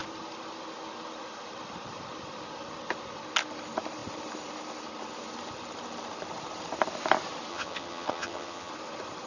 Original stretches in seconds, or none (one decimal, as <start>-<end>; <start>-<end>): 0.0-7.5; 8.7-9.3